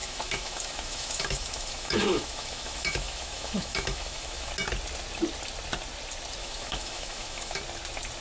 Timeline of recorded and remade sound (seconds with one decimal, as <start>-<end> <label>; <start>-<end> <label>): 0.0-4.5 remade; 4.5-6.4 recorded; 6.4-7.6 remade; 7.6-8.2 recorded